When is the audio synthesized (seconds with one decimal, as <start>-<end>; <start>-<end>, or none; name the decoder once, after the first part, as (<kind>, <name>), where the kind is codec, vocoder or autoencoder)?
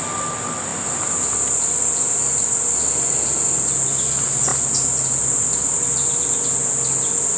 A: none